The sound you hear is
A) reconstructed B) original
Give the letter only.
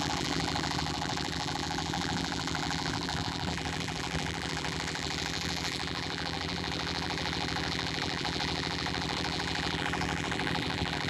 A